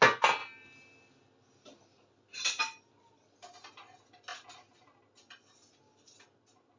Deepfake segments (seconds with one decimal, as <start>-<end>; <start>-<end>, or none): none